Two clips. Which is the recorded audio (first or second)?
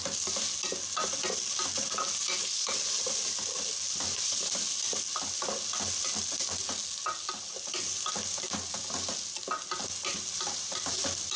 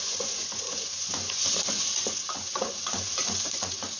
first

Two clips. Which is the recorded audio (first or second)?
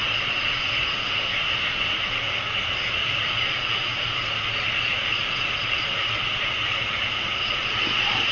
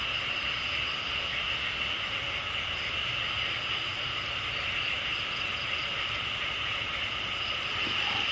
second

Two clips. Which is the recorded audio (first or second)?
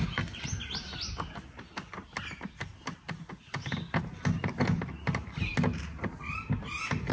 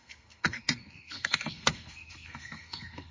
first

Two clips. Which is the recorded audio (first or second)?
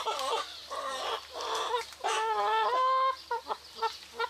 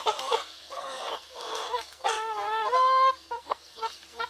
first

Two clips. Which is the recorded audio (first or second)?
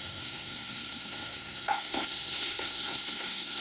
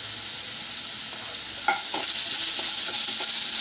second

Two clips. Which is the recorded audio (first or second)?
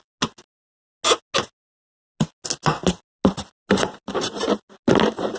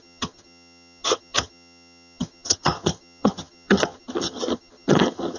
first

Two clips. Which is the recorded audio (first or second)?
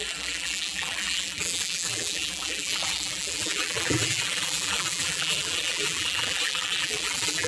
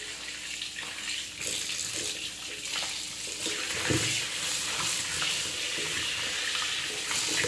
second